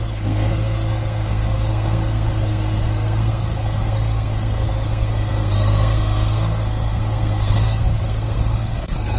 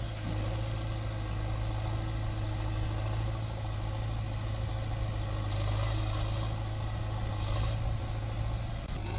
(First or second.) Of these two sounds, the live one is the second